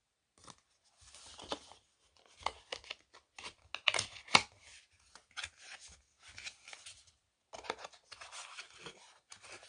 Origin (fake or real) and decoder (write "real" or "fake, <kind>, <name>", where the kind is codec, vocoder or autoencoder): real